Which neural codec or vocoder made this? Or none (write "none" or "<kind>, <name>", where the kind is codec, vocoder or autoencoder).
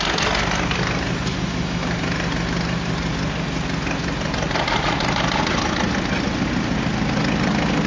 none